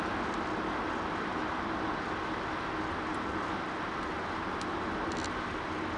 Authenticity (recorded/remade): recorded